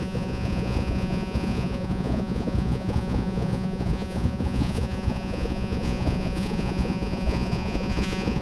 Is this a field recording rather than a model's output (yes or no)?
no